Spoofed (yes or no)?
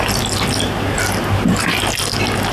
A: no